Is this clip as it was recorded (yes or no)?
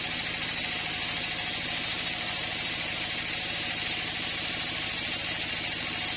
no